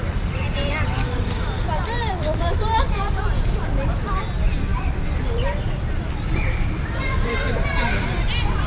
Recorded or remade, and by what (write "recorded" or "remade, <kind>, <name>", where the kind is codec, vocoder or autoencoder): remade, vocoder, BigVGAN v2